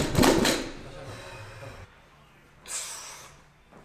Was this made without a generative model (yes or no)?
yes